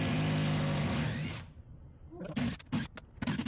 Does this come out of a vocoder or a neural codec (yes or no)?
no